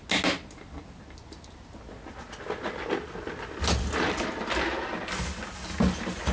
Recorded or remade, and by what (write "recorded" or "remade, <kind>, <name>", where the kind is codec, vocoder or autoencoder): recorded